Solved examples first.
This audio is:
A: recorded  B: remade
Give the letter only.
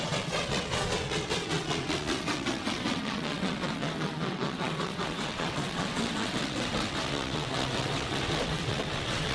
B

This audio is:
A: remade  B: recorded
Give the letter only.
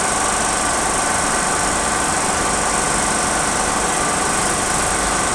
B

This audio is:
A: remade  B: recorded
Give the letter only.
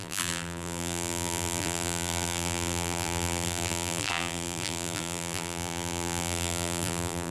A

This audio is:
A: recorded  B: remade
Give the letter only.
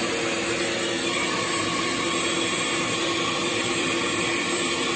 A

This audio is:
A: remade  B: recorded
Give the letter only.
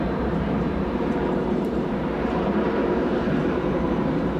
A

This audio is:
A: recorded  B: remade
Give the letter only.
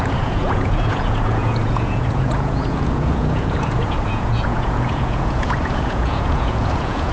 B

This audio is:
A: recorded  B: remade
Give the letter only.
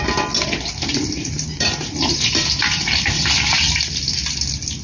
A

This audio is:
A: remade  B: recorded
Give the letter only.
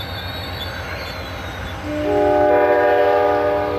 B